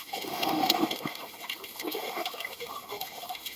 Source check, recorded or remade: remade